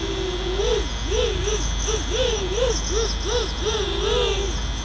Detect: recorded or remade recorded